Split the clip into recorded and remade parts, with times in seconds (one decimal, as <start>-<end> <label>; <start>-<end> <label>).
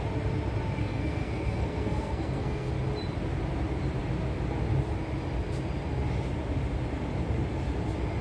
0.0-0.8 recorded; 0.8-2.7 remade; 2.7-8.2 recorded